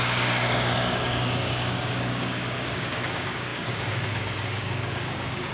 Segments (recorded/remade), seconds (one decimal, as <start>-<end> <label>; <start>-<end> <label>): 0.0-5.5 remade